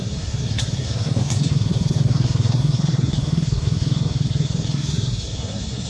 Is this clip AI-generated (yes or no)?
yes